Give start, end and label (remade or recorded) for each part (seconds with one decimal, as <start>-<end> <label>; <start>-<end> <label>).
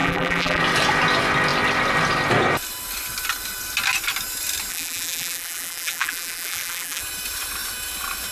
0.0-0.6 remade; 0.6-4.7 recorded; 4.7-7.0 remade; 7.0-8.3 recorded